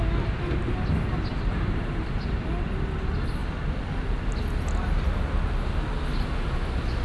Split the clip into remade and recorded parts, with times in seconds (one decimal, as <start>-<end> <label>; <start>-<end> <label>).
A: 0.0-1.3 recorded; 1.3-2.3 remade; 2.3-7.0 recorded